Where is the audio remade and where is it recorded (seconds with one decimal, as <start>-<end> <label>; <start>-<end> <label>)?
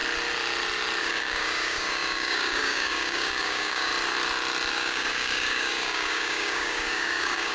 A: 0.0-1.0 recorded; 1.0-3.9 remade; 3.9-4.7 recorded; 4.7-7.5 remade